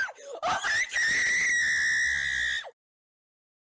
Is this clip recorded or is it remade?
recorded